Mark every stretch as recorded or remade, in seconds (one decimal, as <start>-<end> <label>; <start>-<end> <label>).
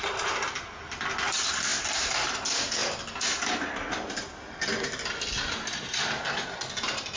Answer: 0.0-7.2 recorded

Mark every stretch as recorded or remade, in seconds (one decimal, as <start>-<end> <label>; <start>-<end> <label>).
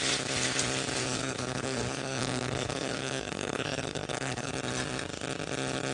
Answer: 0.0-1.0 recorded; 1.0-4.5 remade; 4.5-5.9 recorded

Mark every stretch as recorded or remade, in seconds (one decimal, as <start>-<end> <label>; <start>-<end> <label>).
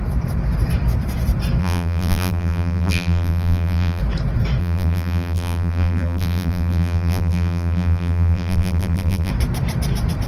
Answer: 0.0-1.6 recorded; 1.6-4.0 remade; 4.0-4.6 recorded; 4.6-9.3 remade; 9.3-10.3 recorded